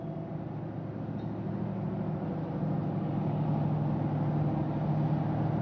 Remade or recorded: recorded